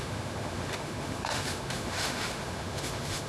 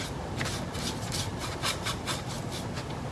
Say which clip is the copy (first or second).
first